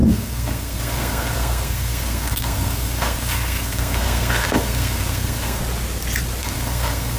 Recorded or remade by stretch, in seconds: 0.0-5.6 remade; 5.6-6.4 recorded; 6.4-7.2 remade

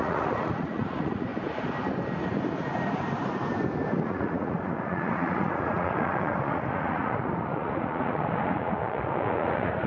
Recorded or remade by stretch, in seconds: 0.0-1.3 remade; 1.3-4.0 recorded; 4.0-9.9 remade

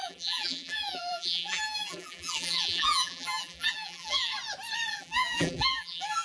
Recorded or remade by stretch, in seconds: 0.0-4.3 remade; 4.3-4.9 recorded; 4.9-6.2 remade

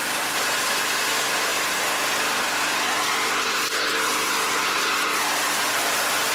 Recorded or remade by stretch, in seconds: 0.0-6.3 recorded

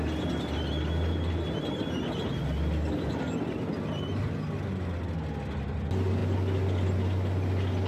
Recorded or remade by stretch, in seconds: 0.0-7.9 recorded